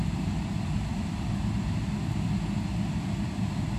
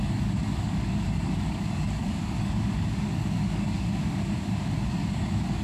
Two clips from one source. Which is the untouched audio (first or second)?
first